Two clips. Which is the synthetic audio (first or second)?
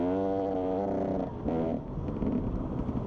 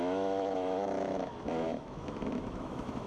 second